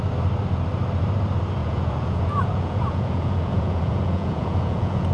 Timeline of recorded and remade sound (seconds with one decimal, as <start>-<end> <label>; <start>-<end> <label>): 0.0-1.6 recorded; 1.6-5.1 remade